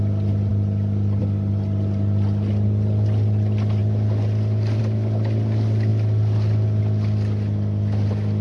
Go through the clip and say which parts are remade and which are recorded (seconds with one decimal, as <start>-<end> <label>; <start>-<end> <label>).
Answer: 0.0-8.4 recorded